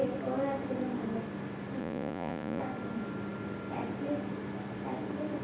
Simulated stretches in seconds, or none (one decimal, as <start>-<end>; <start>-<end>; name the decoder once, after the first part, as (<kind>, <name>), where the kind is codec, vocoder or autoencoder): 1.8-2.6 (vocoder, Vocos)